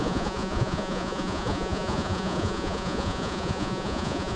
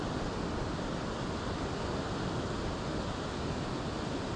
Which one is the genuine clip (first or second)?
second